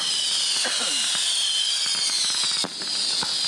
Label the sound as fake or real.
real